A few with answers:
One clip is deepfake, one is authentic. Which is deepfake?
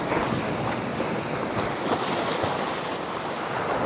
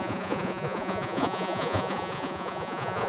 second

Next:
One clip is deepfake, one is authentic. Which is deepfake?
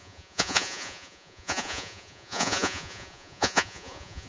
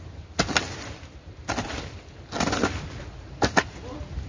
first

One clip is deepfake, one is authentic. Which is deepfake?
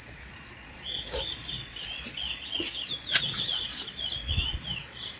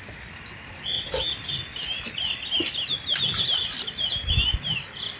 first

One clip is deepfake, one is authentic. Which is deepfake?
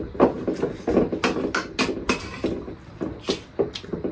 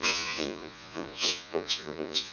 second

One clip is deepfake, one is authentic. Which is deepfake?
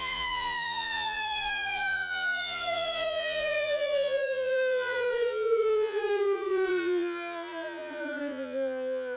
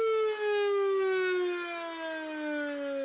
first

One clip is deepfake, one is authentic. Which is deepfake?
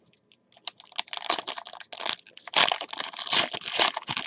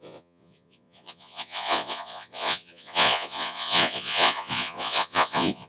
second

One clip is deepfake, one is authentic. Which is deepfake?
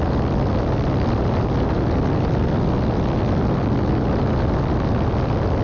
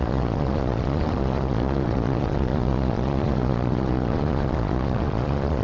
second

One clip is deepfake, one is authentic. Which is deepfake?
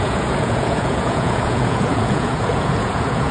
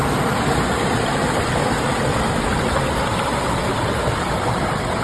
first